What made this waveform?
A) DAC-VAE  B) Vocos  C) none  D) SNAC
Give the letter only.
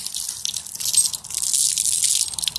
C